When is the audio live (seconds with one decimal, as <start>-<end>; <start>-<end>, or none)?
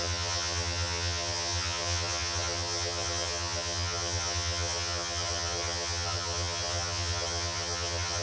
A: none